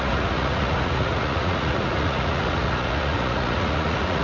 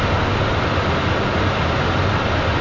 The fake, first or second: first